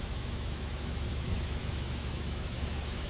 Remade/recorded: remade